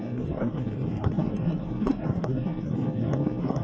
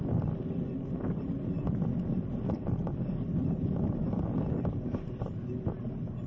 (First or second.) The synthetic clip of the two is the first